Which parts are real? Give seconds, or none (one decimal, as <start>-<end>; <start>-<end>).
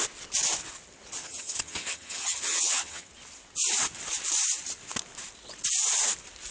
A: 0.0-1.2; 3.1-6.5